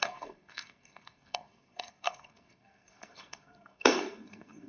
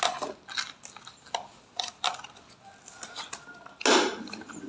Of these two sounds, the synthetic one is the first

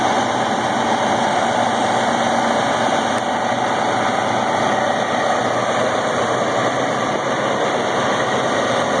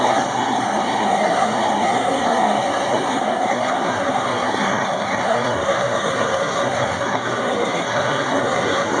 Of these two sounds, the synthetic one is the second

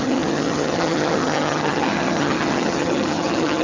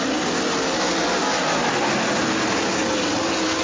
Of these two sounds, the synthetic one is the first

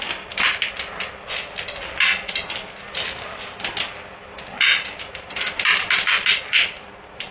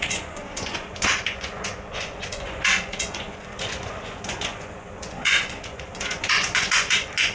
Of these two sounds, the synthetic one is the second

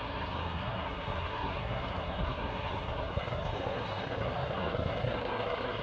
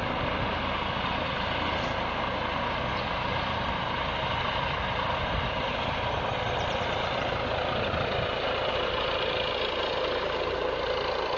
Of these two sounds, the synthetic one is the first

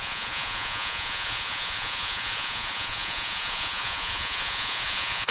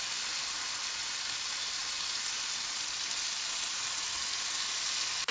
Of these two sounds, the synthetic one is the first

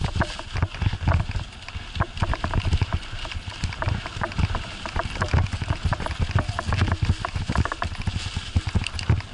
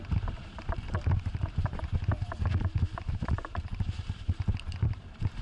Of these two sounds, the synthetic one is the second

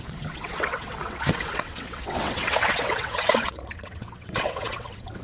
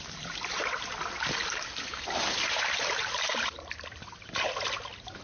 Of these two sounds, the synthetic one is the first